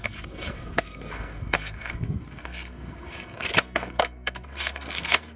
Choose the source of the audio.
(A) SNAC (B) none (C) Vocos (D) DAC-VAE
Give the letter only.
A